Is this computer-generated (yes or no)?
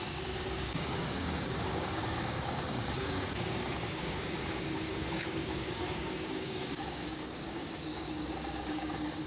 yes